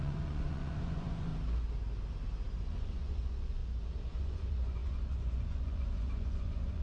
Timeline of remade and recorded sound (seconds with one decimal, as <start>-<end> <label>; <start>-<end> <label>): 0.0-1.3 remade; 1.3-2.6 recorded; 2.6-3.6 remade; 3.6-4.2 recorded; 4.2-6.8 remade